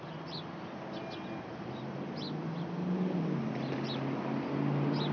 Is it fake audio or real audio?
real